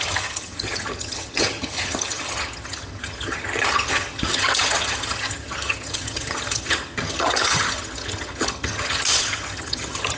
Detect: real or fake fake